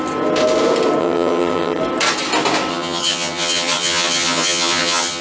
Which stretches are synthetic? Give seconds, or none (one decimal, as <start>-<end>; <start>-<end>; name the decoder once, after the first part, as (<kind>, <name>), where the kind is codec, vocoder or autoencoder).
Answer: 1.0-1.8 (vocoder, HiFi-GAN); 2.7-5.2